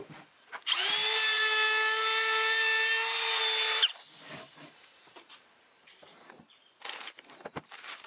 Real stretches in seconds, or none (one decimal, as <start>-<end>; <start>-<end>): 1.4-3.8